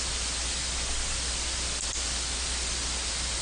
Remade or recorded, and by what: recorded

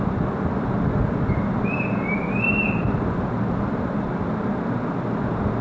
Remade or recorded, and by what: recorded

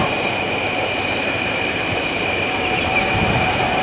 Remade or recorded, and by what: remade, vocoder, BigVGAN v2